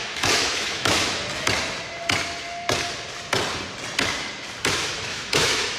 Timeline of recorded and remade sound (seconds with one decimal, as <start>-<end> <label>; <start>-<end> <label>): 0.0-1.2 remade; 1.2-4.7 recorded; 4.7-5.8 remade